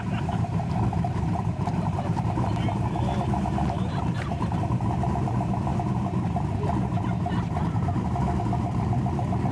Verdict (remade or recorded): remade